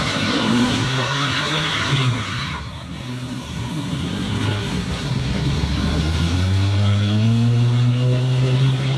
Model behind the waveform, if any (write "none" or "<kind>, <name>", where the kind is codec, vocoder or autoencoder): codec, SNAC